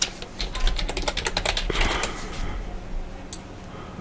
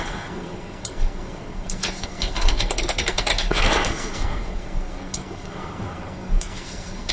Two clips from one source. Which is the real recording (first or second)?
first